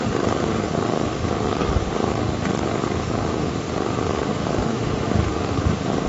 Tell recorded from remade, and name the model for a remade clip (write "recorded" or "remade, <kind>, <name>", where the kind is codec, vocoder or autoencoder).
remade, autoencoder, DAC-VAE